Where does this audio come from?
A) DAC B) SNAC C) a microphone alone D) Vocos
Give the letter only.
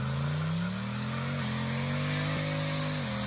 C